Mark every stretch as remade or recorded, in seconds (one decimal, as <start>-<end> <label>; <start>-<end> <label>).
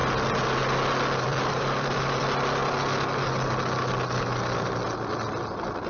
0.0-1.3 recorded; 1.3-2.2 remade; 2.2-5.9 recorded